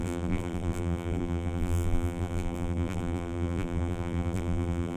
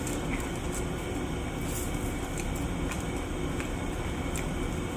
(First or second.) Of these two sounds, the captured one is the second